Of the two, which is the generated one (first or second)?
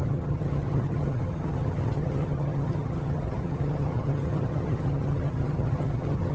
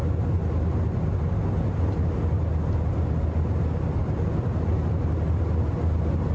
first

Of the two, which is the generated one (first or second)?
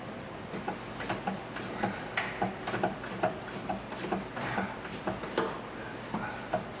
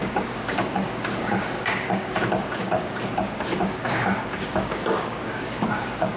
second